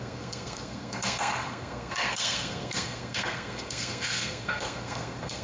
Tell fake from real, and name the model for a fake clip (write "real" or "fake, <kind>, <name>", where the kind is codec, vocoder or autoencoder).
fake, codec, SNAC